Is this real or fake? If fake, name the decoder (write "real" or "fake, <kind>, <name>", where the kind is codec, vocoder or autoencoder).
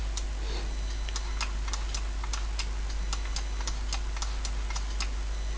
real